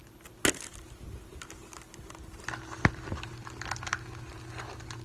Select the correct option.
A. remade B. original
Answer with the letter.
B